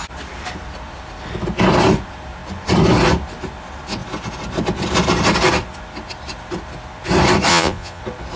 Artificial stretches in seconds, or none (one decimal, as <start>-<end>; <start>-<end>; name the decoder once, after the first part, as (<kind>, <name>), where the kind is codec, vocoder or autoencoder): 7.5-8.0 (vocoder, Vocos)